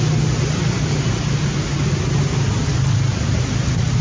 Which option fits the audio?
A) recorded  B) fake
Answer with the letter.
A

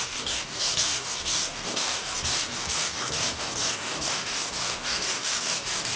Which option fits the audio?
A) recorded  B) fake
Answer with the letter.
B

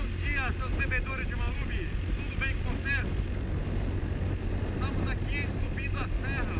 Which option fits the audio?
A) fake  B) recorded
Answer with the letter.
B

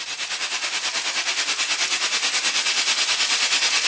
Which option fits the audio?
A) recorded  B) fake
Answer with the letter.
A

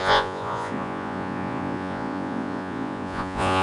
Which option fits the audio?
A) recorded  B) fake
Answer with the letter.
B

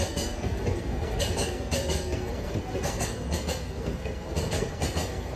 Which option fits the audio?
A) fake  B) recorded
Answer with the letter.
A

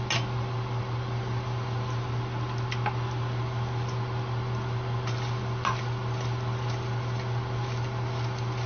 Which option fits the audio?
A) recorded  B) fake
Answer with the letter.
A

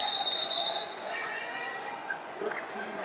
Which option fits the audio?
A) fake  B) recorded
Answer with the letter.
A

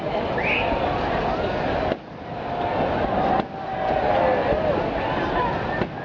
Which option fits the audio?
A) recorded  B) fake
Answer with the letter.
A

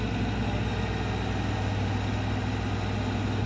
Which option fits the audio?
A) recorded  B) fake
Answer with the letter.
A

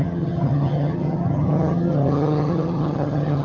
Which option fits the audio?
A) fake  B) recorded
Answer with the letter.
A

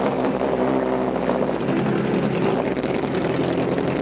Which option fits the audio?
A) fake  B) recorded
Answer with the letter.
B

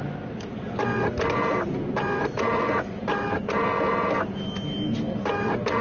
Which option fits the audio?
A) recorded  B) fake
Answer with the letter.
A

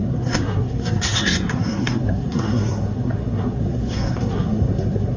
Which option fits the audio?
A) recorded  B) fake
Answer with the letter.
B